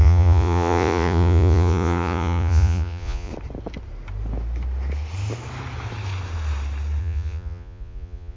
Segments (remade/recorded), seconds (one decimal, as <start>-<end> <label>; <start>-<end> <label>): 0.0-3.3 remade; 3.3-7.0 recorded; 7.0-8.4 remade